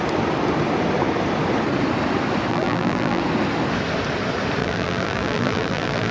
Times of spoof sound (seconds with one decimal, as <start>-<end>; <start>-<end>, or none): 2.5-3.2; 4.6-6.1